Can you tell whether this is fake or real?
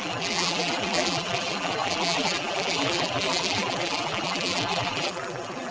fake